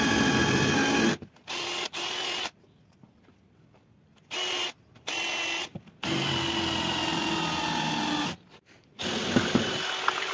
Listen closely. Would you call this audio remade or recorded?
recorded